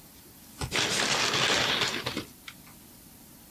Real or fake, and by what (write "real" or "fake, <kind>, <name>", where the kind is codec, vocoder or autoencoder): real